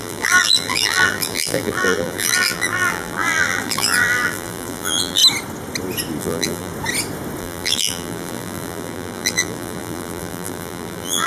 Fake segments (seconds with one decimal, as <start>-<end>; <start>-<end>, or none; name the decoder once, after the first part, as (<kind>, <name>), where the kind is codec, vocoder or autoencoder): 0.0-5.2 (vocoder, BigVGAN v2); 6.2-6.7; 7.4-11.3